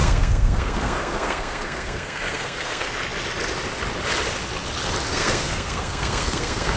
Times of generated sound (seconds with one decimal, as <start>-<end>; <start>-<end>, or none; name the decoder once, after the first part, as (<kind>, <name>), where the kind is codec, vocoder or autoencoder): 0.0-2.9 (codec, SNAC); 5.1-6.8